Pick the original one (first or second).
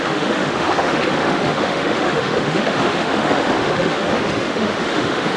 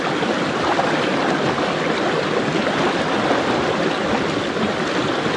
second